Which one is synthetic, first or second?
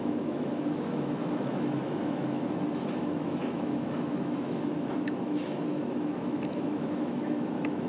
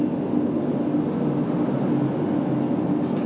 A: first